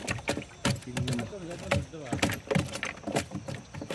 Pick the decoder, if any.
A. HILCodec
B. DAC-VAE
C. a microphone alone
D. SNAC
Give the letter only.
C